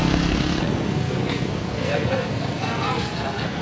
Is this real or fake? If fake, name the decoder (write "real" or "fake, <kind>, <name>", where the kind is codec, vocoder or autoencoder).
fake, codec, SNAC